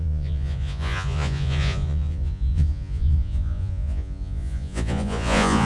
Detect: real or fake fake